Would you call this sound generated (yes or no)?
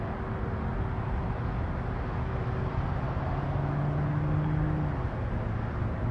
no